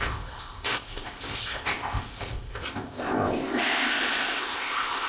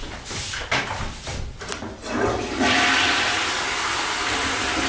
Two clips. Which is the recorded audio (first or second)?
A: second